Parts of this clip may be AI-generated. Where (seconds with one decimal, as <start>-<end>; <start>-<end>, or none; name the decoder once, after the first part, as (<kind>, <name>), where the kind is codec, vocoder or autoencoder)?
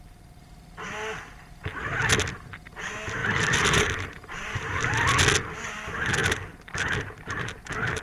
3.2-5.1 (vocoder, BigVGAN v2)